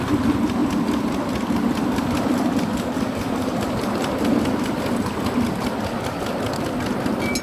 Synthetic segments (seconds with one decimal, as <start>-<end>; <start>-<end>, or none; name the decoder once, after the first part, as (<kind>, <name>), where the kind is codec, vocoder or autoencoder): none